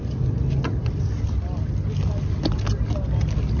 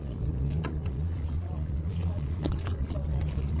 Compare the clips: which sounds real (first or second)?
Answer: first